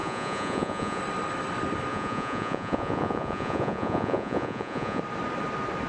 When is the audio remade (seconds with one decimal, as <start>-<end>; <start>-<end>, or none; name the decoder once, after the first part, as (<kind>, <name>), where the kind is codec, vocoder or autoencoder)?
0.0-1.0 (vocoder, Vocos); 1.9-5.0